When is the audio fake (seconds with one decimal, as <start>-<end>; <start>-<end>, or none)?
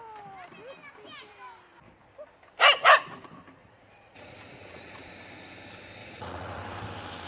3.6-5.0; 6.0-6.6